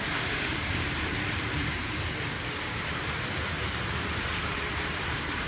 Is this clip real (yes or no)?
no